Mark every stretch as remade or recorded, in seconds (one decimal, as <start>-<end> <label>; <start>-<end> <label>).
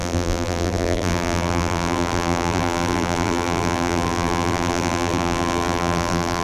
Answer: 0.0-6.4 remade